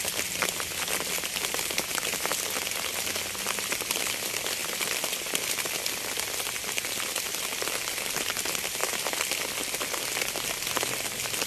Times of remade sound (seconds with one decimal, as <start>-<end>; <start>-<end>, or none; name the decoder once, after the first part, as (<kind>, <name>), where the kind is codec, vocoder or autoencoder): 4.6-5.2 (vocoder, BigVGAN v2)

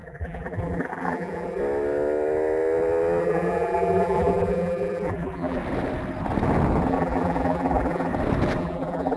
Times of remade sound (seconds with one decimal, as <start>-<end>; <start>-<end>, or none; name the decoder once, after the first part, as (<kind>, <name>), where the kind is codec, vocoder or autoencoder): 0.0-1.6 (vocoder, BigVGAN v2); 3.2-5.6; 6.9-8.1; 8.6-9.2